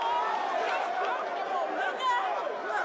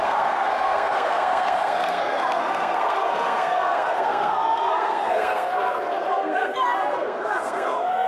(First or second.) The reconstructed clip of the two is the second